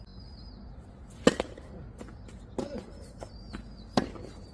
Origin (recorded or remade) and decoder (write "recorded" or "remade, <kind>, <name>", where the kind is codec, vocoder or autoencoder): recorded